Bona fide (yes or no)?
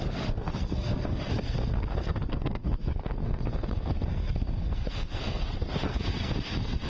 no